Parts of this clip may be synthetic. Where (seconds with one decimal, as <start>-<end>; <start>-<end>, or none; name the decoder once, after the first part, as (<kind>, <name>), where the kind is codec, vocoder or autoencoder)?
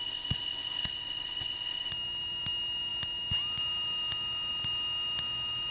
0.0-1.9 (codec, ZipCodec)